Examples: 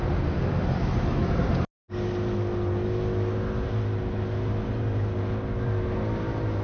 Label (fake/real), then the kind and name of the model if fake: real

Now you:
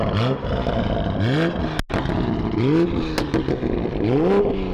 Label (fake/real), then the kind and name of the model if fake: real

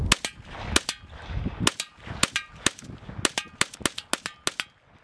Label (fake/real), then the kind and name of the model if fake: real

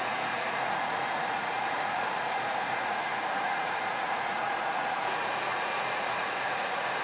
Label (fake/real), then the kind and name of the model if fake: fake, vocoder, Vocos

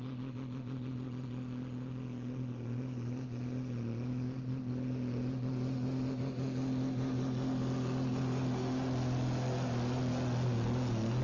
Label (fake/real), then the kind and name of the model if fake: real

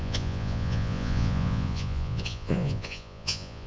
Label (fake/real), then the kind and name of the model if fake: fake, vocoder, Vocos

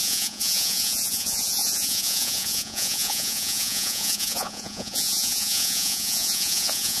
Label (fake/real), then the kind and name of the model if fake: fake, vocoder, Vocos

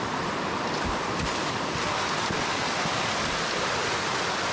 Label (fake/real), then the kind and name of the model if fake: real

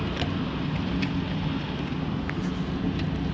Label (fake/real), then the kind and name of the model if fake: real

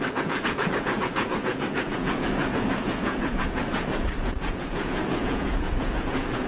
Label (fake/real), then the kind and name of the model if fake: fake, vocoder, Vocos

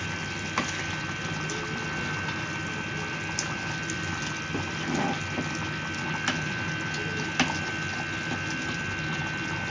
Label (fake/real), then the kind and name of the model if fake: real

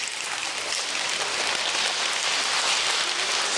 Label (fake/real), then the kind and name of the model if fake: real